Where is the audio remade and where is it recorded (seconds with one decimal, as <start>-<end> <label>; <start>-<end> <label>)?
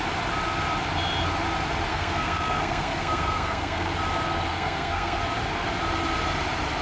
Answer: 0.0-1.9 recorded; 1.9-3.9 remade; 3.9-4.5 recorded; 4.5-5.2 remade; 5.2-6.8 recorded